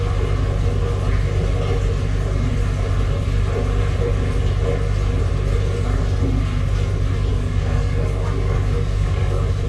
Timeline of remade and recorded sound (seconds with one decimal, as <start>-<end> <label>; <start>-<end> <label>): 0.0-7.3 recorded; 7.3-9.7 remade